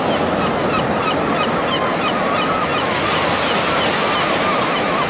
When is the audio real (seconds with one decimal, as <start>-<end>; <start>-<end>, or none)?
0.0-0.7; 1.6-5.1

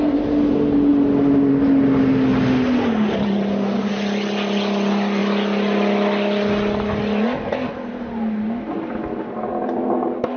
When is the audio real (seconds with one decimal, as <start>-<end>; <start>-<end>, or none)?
0.0-10.4

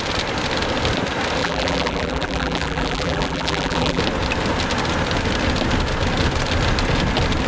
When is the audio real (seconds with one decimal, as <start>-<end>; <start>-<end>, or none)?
0.0-1.4; 4.0-7.5